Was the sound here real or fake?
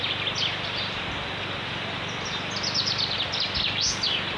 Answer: real